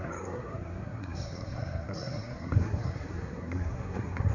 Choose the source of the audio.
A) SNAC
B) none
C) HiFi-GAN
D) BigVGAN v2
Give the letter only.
A